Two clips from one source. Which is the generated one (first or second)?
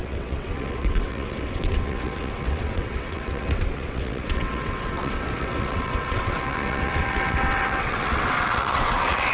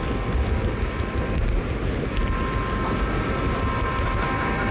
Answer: first